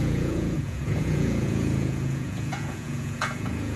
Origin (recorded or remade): remade